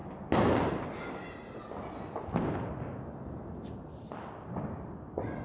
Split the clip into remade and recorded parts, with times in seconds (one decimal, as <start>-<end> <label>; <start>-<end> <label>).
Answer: 0.0-5.4 recorded